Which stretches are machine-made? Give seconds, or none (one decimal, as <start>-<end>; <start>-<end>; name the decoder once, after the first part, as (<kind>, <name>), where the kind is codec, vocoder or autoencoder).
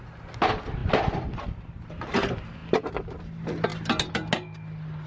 none